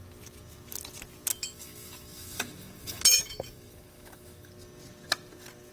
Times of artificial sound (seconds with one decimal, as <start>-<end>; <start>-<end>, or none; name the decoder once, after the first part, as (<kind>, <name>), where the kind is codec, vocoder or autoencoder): 1.3-4.5 (autoencoder, DAC-VAE)